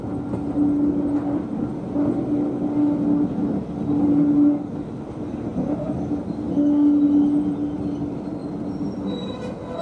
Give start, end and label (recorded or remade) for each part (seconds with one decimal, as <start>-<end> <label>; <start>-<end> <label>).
0.0-9.8 recorded